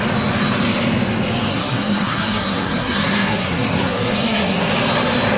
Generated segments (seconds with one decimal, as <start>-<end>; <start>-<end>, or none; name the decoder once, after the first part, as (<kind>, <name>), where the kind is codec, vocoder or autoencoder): 1.5-4.7 (codec, SNAC)